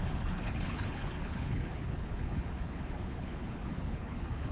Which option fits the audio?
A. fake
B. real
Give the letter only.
A